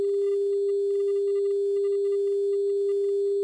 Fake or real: real